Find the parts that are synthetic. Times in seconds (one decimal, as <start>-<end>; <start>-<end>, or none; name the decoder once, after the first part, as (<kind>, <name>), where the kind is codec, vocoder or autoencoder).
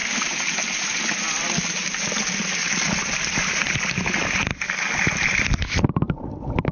none